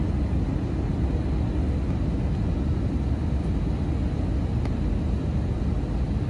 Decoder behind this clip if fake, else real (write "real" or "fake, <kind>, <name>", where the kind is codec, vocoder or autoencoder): real